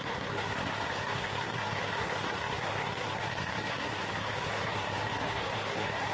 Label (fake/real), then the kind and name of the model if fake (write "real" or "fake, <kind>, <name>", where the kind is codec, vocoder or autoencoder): fake, codec, SNAC